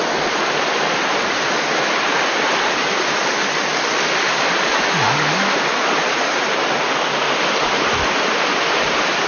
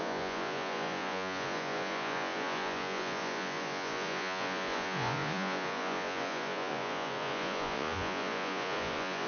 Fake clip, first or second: second